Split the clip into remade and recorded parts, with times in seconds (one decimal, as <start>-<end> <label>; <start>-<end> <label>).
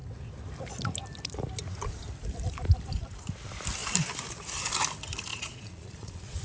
0.0-5.3 recorded; 5.3-6.4 remade